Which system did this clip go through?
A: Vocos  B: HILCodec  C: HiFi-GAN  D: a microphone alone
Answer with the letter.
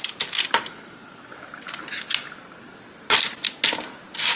D